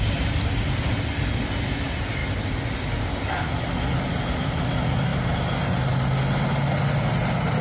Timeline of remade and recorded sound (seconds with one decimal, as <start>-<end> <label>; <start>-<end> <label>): 0.0-7.6 recorded